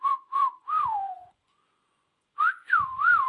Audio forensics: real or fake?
fake